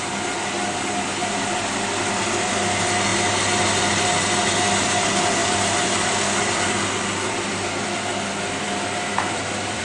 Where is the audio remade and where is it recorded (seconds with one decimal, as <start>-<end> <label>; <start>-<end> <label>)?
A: 0.0-1.2 recorded; 1.2-2.5 remade; 2.5-5.4 recorded; 5.4-9.8 remade